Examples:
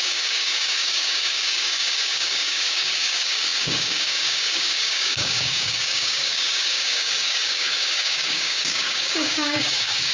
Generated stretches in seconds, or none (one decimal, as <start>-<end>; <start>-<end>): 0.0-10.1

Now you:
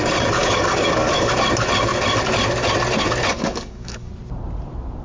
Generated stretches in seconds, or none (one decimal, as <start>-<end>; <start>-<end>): 0.4-1.3; 3.3-4.1

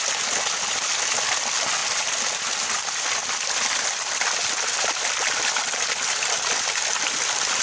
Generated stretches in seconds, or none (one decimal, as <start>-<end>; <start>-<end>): none